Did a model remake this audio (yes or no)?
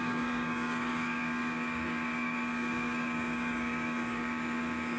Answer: yes